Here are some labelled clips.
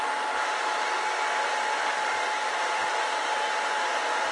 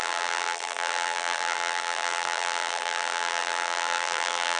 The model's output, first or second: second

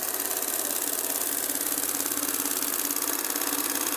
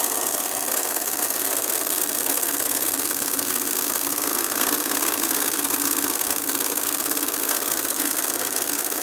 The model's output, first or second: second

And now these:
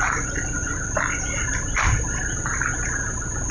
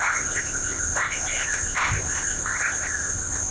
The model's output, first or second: second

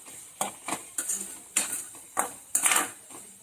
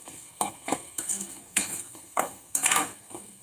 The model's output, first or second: second